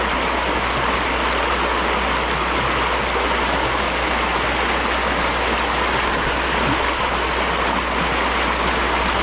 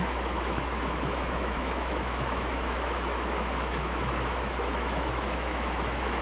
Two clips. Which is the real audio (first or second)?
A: first